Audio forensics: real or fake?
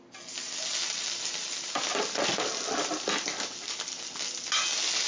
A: real